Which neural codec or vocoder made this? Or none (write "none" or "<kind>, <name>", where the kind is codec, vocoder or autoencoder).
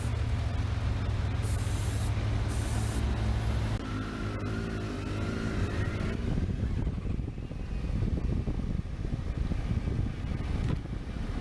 none